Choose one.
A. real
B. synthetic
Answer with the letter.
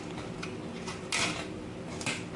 A